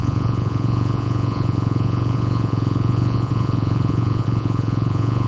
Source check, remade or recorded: remade